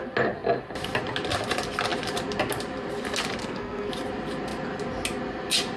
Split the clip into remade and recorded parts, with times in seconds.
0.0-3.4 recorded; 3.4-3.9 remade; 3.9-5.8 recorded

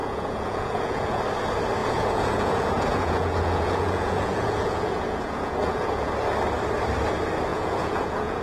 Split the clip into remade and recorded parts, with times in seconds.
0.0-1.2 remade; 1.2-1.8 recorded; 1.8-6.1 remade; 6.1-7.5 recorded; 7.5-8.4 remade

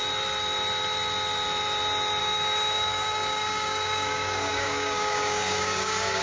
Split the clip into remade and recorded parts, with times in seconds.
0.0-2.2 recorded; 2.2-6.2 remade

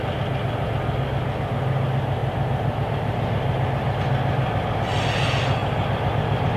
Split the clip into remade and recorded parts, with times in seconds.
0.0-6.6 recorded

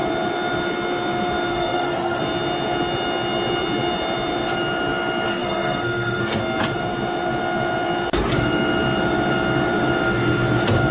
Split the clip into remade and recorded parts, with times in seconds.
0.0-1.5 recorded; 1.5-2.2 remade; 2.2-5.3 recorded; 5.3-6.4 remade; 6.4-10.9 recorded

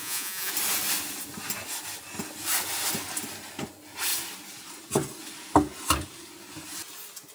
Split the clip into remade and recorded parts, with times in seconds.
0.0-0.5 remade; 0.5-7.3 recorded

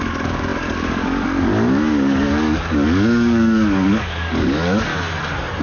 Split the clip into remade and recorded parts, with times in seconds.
0.0-4.9 remade; 4.9-5.6 recorded

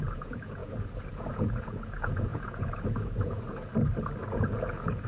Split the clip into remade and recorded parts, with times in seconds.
0.0-3.7 remade; 3.7-4.2 recorded; 4.2-5.1 remade